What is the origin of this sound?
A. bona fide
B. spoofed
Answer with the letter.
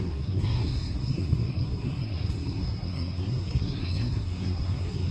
B